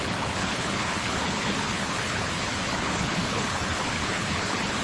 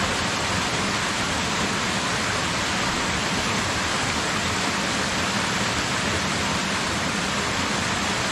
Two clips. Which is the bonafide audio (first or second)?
second